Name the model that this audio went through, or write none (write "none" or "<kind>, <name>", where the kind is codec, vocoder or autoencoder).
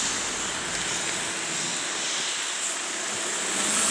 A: none